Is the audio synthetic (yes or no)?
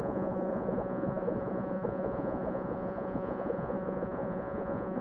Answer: yes